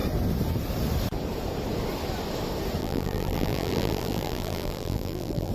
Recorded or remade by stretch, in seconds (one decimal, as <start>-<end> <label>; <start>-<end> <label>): 0.0-2.8 recorded; 2.8-5.5 remade